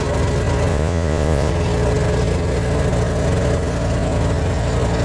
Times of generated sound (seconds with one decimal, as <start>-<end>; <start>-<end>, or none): 0.7-1.5